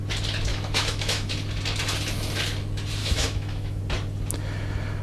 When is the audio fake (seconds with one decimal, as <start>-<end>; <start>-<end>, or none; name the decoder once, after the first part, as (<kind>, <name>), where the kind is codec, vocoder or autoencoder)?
0.5-1.3 (autoencoder, DAC-VAE); 3.0-3.8